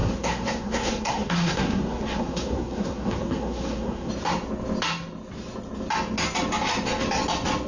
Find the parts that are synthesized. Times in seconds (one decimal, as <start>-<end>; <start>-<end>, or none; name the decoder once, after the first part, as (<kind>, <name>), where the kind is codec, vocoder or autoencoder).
0.0-4.1 (codec, SNAC)